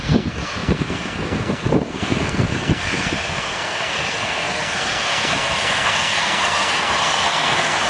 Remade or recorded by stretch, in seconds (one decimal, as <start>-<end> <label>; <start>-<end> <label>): 0.0-7.9 remade

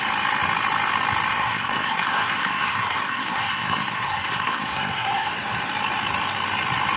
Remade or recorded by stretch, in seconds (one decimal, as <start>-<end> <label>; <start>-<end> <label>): 0.0-1.3 recorded; 1.3-5.3 remade; 5.3-7.0 recorded

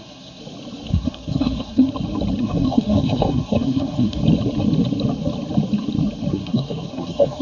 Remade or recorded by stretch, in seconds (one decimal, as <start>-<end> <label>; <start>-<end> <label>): 0.0-0.4 remade; 0.4-0.9 recorded; 0.9-1.9 remade; 1.9-2.4 recorded; 2.4-4.2 remade; 4.2-6.3 recorded; 6.3-7.4 remade

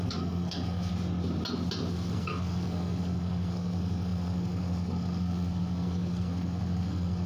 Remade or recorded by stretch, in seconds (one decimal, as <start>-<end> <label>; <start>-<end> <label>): 0.0-0.9 remade; 0.9-1.9 recorded; 1.9-7.3 remade

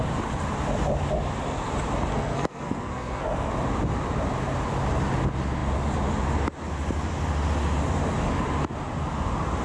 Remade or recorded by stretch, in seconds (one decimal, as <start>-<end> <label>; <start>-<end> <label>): 0.0-2.1 recorded; 2.1-3.5 remade; 3.5-9.6 recorded